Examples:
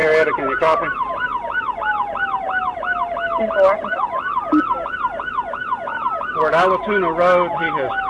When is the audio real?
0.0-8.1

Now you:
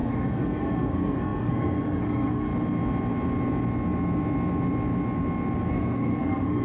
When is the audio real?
2.5-5.7

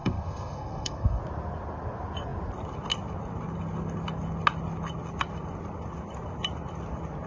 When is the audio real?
1.2-7.3